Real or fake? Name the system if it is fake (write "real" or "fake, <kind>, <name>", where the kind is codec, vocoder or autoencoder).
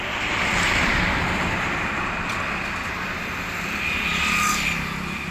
fake, vocoder, BigVGAN v2